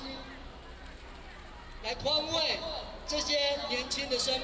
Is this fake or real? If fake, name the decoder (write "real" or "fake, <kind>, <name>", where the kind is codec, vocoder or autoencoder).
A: real